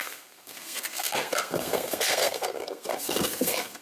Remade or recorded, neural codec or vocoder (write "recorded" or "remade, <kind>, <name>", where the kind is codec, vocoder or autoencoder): remade, codec, SNAC